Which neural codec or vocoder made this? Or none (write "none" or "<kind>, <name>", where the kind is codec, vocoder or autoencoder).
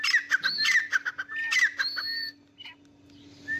none